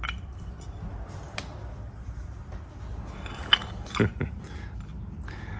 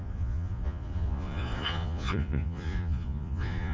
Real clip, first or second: first